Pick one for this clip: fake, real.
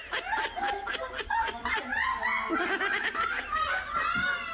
real